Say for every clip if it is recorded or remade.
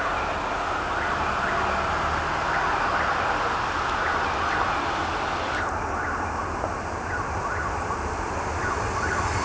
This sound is recorded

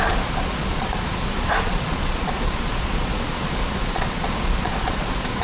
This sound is remade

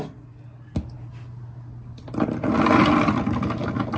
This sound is recorded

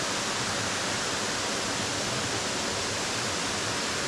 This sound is recorded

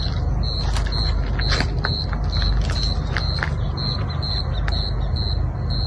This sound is recorded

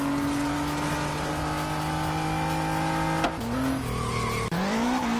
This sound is recorded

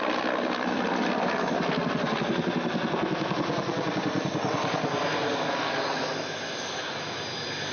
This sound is recorded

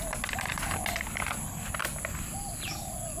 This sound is recorded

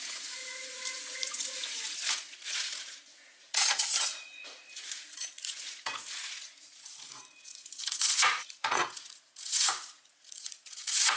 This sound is remade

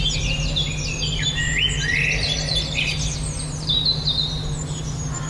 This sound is recorded